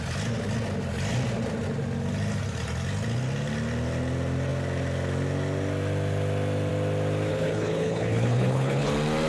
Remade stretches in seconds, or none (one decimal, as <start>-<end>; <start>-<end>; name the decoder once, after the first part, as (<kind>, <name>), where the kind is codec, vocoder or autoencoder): 7.3-8.9 (codec, HILCodec)